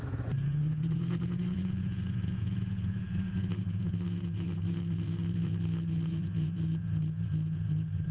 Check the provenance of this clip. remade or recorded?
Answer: remade